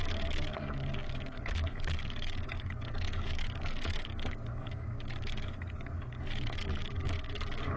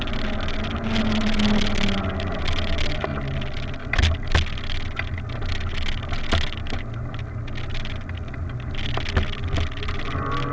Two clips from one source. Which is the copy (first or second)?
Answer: first